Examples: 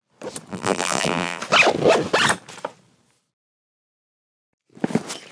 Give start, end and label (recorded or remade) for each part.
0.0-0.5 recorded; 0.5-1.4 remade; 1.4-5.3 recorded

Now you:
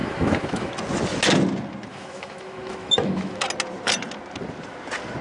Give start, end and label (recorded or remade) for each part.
0.0-0.7 remade; 0.7-1.9 recorded; 1.9-3.4 remade; 3.4-5.2 recorded

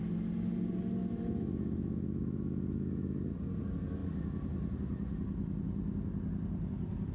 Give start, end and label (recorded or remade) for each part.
0.0-1.0 recorded; 1.0-3.2 remade; 3.2-7.1 recorded

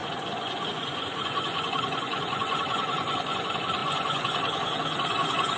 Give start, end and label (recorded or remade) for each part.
0.0-5.6 remade

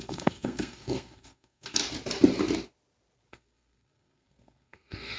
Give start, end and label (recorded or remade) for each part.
0.0-1.8 remade; 1.8-3.3 recorded; 3.3-5.2 remade

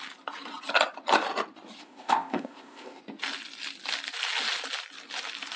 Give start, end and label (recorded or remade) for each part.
0.0-1.8 recorded; 1.8-3.0 remade; 3.0-5.6 recorded

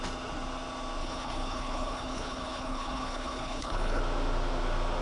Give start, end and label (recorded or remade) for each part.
0.0-1.0 recorded; 1.0-4.0 remade; 4.0-5.0 recorded